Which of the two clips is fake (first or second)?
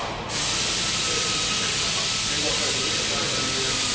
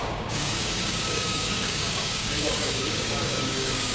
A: second